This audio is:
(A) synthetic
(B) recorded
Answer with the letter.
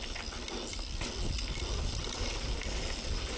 B